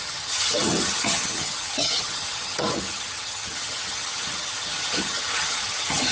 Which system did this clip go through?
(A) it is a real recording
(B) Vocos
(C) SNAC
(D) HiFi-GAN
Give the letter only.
D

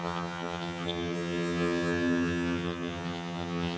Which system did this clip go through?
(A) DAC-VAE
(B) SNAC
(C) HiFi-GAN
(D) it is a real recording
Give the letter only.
C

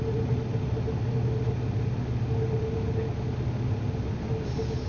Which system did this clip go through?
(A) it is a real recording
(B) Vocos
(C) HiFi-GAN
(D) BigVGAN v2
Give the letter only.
A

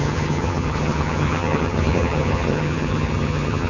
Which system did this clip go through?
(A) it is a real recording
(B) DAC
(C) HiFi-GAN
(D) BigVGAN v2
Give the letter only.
C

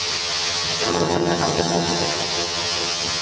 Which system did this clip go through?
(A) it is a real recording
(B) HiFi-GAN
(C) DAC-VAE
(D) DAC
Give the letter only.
B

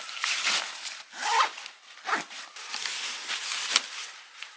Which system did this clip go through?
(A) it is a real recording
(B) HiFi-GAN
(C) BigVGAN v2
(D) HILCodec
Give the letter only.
A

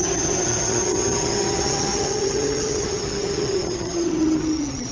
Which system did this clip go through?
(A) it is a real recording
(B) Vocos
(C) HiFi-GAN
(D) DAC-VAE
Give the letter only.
C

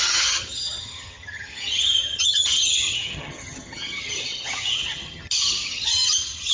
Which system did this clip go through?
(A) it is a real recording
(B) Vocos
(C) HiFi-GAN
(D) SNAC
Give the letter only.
C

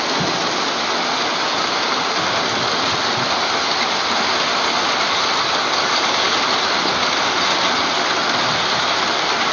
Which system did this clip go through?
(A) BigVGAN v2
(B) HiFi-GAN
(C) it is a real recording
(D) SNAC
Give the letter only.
C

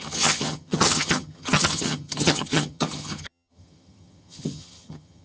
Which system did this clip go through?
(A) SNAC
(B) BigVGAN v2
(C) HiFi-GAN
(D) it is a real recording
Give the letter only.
C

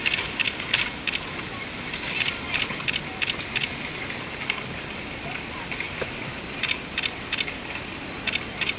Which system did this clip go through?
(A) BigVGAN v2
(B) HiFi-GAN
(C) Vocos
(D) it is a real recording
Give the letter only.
D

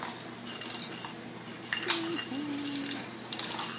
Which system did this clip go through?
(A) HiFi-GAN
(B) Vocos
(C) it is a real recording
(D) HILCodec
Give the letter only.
C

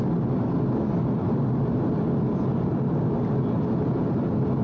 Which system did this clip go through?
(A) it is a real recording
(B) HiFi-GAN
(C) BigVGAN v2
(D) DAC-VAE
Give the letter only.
A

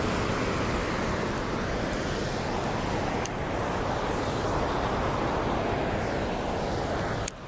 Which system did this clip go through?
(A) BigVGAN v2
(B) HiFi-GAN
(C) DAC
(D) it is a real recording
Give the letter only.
D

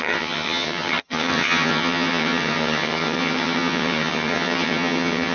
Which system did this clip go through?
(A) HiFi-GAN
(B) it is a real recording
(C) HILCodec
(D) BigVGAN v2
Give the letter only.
A